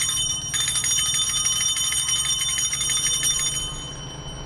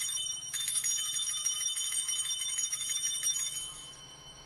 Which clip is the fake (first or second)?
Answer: second